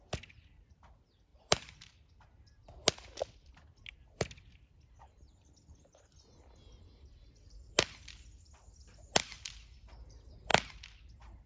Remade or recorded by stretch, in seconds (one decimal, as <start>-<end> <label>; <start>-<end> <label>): 0.0-1.3 recorded; 1.3-2.2 remade; 2.2-11.5 recorded